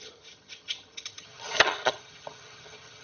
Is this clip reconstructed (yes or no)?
yes